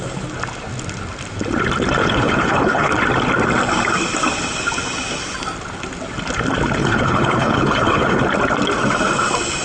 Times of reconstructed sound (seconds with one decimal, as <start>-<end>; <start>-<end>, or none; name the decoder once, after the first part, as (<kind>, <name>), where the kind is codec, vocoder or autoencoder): 2.0-2.9 (codec, HILCodec); 6.8-8.2